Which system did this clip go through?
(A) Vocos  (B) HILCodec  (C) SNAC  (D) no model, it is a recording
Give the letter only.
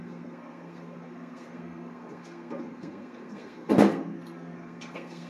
C